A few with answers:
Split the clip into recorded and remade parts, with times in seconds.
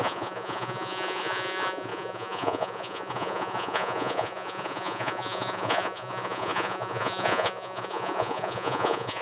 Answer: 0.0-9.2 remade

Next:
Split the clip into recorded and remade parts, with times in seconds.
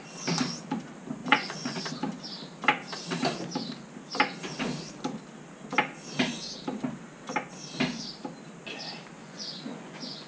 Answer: 0.0-1.2 recorded; 1.2-1.8 remade; 1.8-9.2 recorded; 9.2-10.3 remade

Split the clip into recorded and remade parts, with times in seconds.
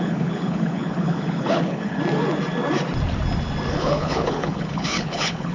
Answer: 0.0-2.0 remade; 2.0-3.7 recorded; 3.7-5.5 remade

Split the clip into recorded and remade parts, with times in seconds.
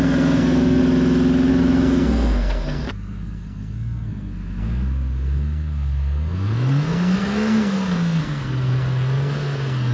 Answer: 0.0-0.8 remade; 0.8-1.5 recorded; 1.5-9.9 remade